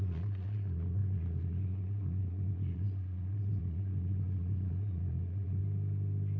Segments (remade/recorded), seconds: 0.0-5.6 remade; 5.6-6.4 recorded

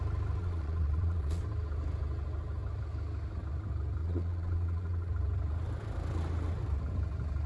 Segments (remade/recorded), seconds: 0.0-0.4 recorded; 0.4-1.4 remade; 1.4-4.0 recorded; 4.0-5.1 remade; 5.1-7.5 recorded

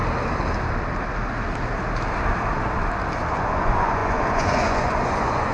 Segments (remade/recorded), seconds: 0.0-3.3 recorded; 3.3-5.5 remade

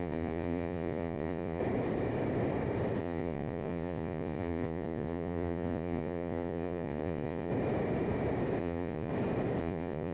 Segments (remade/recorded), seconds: 0.0-1.6 remade; 1.6-3.0 recorded; 3.0-7.5 remade; 7.5-8.6 recorded; 8.6-9.1 remade; 9.1-9.6 recorded; 9.6-10.1 remade

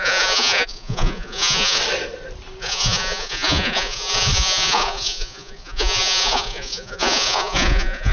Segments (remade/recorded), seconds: 0.0-1.8 remade; 1.8-2.6 recorded; 2.6-8.1 remade

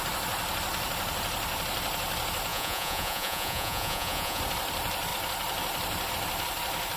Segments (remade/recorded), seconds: 0.0-2.5 recorded; 2.5-4.4 remade; 4.4-7.0 recorded

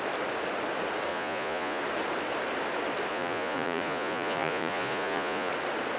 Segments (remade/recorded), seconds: 0.0-1.1 recorded; 1.1-1.8 remade; 1.8-3.1 recorded; 3.1-5.5 remade; 5.5-6.0 recorded

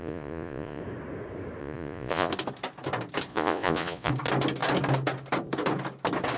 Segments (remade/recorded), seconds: 0.0-0.8 remade; 0.8-1.6 recorded; 1.6-2.3 remade; 2.3-3.3 recorded; 3.3-4.1 remade; 4.1-6.4 recorded